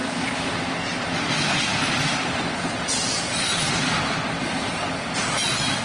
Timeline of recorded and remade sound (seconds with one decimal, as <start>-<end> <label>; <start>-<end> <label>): 0.0-5.8 recorded